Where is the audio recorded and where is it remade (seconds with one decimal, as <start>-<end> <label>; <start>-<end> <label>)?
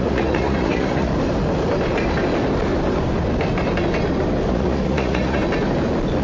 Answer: 0.0-1.1 remade; 1.1-4.5 recorded; 4.5-5.4 remade; 5.4-6.2 recorded